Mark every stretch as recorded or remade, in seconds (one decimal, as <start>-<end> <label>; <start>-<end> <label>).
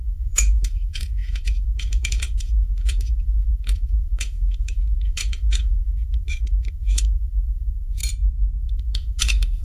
0.0-8.0 remade; 8.0-8.6 recorded; 8.6-9.6 remade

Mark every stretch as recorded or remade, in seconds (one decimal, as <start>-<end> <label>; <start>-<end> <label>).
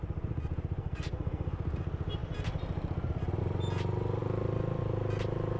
0.0-0.8 recorded; 0.8-1.5 remade; 1.5-5.6 recorded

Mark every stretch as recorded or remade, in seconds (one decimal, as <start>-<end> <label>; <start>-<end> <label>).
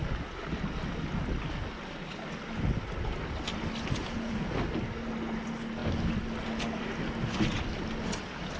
0.0-4.0 recorded; 4.0-4.5 remade; 4.5-8.6 recorded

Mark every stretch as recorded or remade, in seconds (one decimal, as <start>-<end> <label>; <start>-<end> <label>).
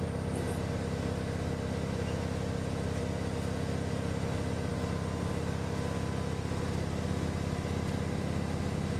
0.0-9.0 recorded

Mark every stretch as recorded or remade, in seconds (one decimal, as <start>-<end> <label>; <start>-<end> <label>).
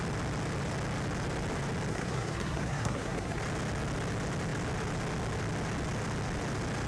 0.0-1.9 recorded; 1.9-3.4 remade; 3.4-6.9 recorded